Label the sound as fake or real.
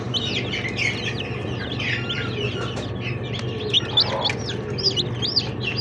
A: real